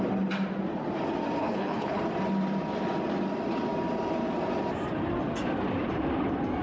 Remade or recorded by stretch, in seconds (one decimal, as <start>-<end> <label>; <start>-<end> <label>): 0.0-1.4 recorded; 1.4-2.0 remade; 2.0-6.6 recorded